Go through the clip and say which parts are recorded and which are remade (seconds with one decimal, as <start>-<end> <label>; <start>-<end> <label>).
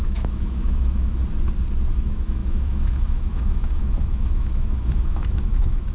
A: 0.0-1.2 remade; 1.2-2.0 recorded; 2.0-5.9 remade